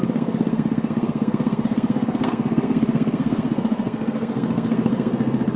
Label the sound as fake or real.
fake